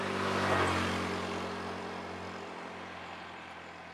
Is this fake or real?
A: real